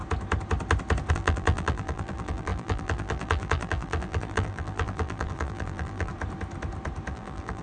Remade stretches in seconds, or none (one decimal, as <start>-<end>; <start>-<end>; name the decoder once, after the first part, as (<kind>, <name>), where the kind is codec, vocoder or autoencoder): 1.1-6.1 (vocoder, BigVGAN v2); 7.1-7.6